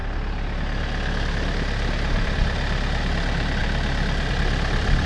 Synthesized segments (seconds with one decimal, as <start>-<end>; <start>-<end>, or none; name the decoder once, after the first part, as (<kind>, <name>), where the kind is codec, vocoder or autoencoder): none